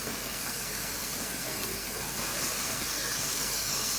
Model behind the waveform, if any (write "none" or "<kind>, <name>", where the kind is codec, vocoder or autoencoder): codec, SNAC